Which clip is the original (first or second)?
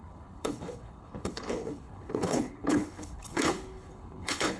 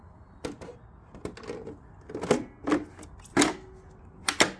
second